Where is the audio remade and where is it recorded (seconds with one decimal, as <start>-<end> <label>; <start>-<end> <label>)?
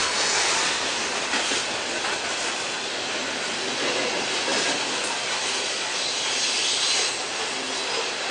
0.0-0.5 remade; 0.5-8.3 recorded